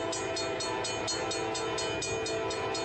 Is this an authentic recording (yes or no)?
yes